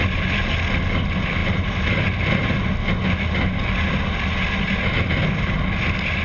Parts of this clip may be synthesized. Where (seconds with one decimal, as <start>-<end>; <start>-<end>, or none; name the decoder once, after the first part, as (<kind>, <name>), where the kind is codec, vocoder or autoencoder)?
none